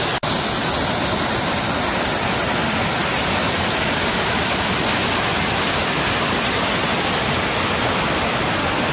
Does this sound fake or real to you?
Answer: real